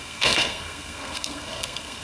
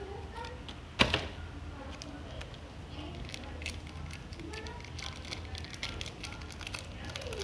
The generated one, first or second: first